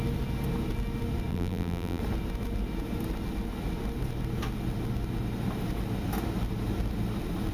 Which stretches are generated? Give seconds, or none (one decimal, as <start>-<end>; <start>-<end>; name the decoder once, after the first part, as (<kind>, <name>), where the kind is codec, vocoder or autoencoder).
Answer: 1.3-2.0 (vocoder, BigVGAN v2)